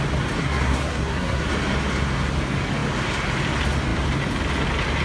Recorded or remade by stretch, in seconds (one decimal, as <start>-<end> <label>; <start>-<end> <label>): 0.0-0.4 recorded; 0.4-1.5 remade; 1.5-5.0 recorded